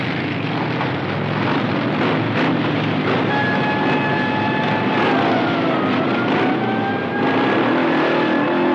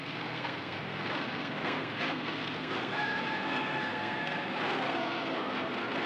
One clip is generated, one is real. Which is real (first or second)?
first